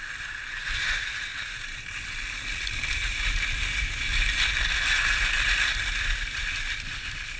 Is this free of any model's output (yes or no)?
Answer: yes